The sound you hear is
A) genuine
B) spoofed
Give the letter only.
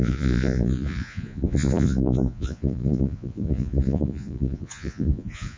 B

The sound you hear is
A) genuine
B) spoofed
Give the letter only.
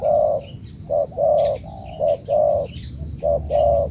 A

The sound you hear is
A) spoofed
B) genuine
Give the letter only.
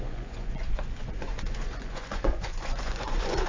A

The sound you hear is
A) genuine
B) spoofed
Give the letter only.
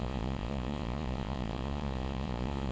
B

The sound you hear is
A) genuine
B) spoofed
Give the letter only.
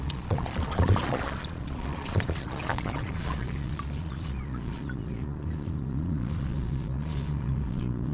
B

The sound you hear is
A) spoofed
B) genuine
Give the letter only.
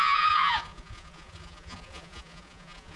A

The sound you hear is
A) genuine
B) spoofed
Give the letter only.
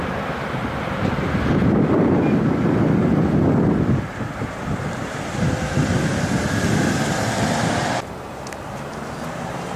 A